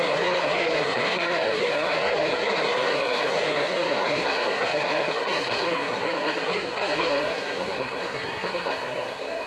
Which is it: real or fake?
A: fake